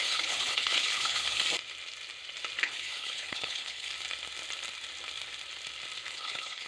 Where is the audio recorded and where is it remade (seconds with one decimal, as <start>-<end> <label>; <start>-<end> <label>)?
0.0-1.4 remade; 1.4-2.6 recorded; 2.6-3.9 remade; 3.9-6.1 recorded; 6.1-6.7 remade